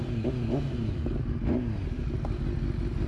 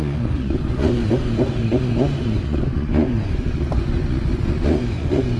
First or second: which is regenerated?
second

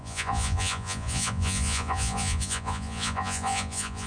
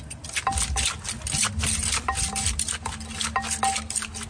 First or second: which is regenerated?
first